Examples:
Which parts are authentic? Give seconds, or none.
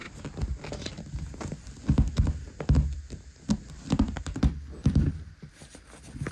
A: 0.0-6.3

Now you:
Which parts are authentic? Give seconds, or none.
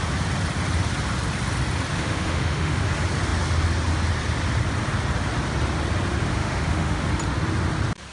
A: 0.0-1.9; 2.8-6.3; 7.1-8.1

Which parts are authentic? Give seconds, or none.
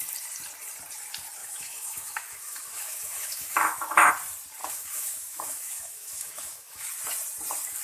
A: 0.0-1.4; 4.1-4.6; 6.9-7.8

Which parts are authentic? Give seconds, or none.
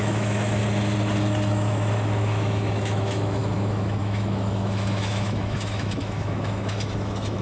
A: 0.6-1.5